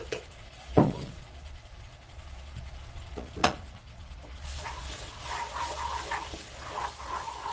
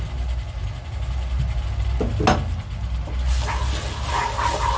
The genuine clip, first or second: second